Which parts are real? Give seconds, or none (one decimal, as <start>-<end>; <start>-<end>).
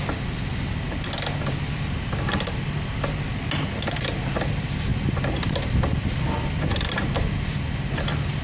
0.0-8.4